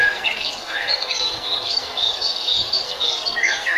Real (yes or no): no